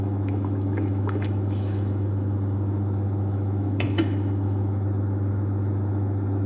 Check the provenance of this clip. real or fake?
fake